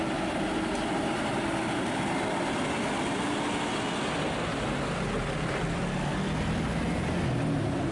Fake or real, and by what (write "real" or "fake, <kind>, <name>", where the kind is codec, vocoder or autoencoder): real